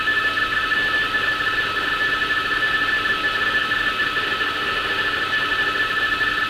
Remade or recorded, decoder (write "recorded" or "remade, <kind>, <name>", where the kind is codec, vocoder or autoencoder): recorded